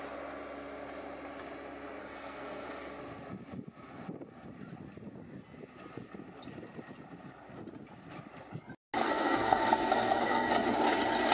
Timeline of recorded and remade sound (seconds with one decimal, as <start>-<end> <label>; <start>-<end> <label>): 0.0-2.0 recorded; 2.0-3.0 remade; 3.0-9.0 recorded; 9.0-10.5 remade; 10.5-11.3 recorded